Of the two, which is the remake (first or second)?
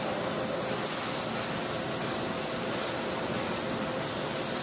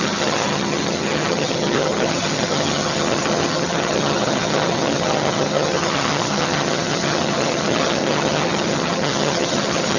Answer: second